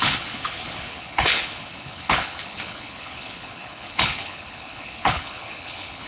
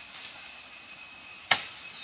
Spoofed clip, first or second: first